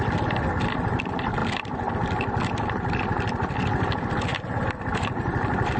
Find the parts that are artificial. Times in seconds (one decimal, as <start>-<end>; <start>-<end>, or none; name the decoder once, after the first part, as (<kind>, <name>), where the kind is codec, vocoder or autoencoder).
1.4-1.9 (vocoder, BigVGAN v2); 4.3-5.8